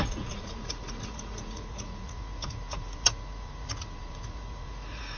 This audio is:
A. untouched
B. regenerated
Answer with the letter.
B